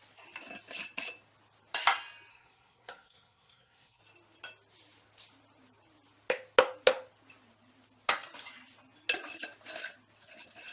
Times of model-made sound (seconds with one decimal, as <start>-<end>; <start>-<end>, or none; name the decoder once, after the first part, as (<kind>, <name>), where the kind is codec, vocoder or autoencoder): 2.3-4.0 (codec, SNAC)